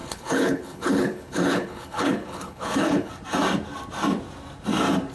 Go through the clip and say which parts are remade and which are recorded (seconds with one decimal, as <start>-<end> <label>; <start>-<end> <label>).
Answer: 0.0-3.1 remade; 3.1-5.1 recorded